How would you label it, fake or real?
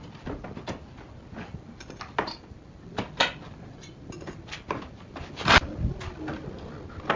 real